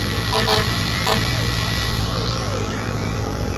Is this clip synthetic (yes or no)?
yes